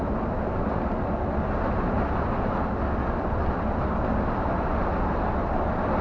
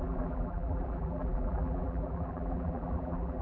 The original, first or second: first